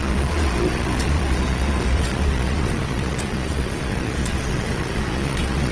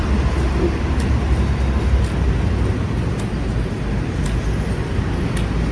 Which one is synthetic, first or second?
first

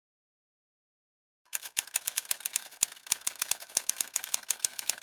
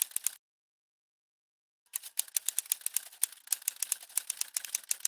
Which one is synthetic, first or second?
first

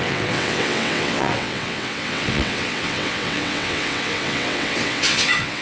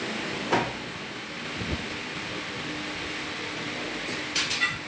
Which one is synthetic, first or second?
first